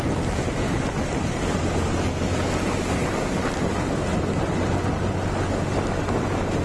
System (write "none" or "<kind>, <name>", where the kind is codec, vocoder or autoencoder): none